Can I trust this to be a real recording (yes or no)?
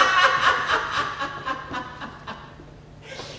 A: yes